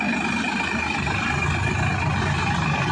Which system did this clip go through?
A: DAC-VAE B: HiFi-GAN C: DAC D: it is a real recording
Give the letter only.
D